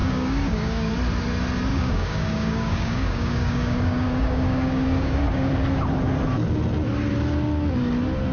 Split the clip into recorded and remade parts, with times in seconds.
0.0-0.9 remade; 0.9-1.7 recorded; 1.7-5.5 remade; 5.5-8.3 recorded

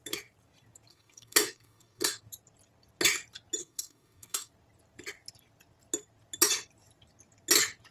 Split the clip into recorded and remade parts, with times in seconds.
0.0-0.9 recorded; 0.9-2.2 remade; 2.2-3.6 recorded; 3.6-4.5 remade; 4.5-7.9 recorded

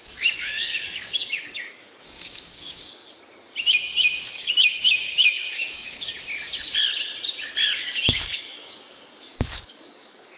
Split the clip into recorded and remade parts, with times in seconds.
0.0-3.0 remade; 3.0-4.2 recorded; 4.2-6.1 remade; 6.1-7.7 recorded; 7.7-10.4 remade

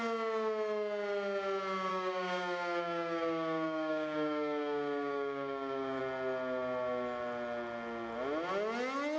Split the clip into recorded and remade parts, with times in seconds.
0.0-1.9 recorded; 1.9-6.0 remade; 6.0-9.2 recorded

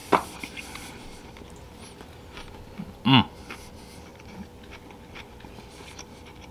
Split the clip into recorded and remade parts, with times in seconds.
0.0-6.5 recorded